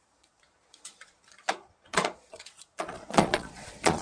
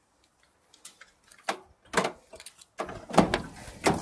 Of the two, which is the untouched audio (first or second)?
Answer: second